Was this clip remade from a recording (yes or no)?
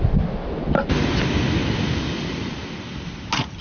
no